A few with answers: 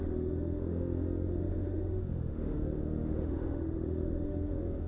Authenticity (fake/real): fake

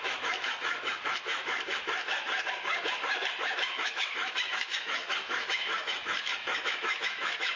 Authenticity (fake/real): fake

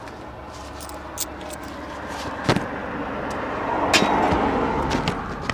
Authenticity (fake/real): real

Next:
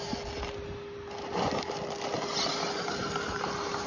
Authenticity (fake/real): real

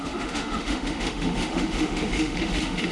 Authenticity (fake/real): fake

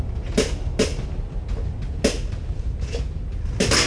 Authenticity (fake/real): real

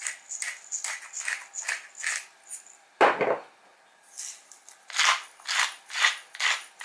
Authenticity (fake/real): real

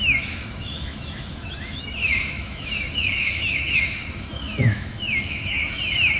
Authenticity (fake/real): fake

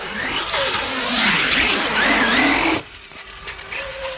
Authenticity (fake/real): real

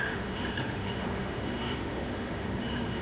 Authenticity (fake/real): fake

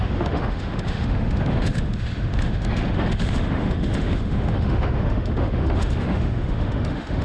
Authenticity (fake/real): fake